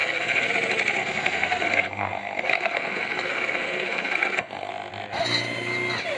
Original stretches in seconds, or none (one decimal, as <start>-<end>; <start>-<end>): 0.5-1.0; 4.7-6.2